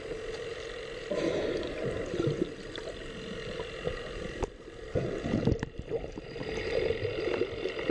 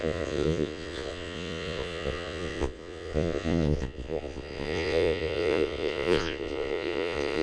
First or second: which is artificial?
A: second